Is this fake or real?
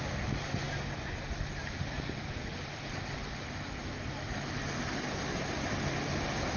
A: real